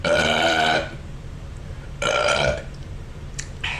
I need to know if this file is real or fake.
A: fake